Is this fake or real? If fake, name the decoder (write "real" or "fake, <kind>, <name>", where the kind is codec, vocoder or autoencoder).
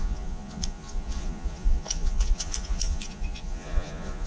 fake, vocoder, Vocos